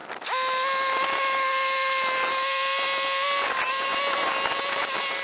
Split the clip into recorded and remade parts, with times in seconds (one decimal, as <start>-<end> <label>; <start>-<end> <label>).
0.0-5.2 recorded